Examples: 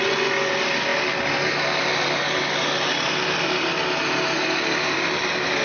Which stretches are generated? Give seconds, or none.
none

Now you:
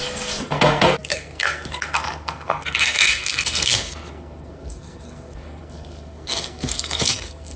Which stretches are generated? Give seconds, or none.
0.0-7.6

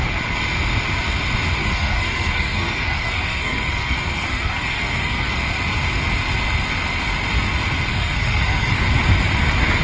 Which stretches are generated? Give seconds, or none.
1.6-5.3; 7.9-8.8

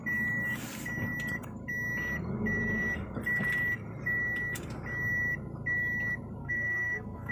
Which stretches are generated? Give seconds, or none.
6.4-7.3